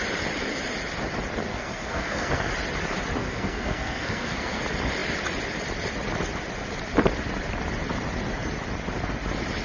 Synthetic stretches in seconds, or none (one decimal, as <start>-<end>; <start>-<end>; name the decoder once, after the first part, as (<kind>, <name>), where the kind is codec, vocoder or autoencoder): 1.5-2.5 (codec, SNAC); 3.2-4.6